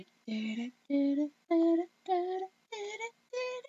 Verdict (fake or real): real